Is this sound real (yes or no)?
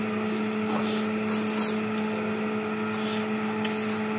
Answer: yes